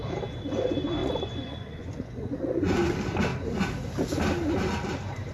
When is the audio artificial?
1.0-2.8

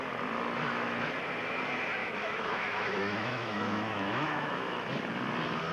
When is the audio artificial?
2.0-5.0

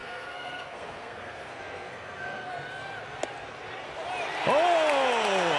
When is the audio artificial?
0.0-2.5

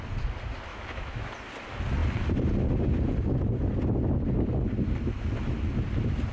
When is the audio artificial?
0.7-1.3

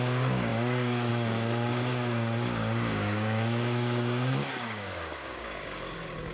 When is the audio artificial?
0.0-6.3

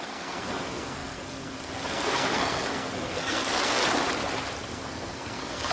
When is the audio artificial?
0.0-3.8; 4.7-5.7